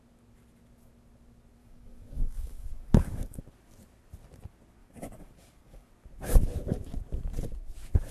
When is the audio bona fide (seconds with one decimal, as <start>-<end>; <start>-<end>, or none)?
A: 0.0-1.6; 3.4-4.8; 5.9-8.1